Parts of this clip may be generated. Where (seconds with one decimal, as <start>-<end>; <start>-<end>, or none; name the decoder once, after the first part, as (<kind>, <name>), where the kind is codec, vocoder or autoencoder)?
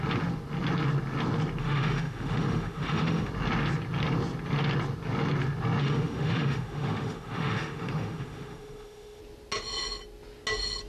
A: 1.6-3.3 (autoencoder, DAC-VAE); 5.8-9.2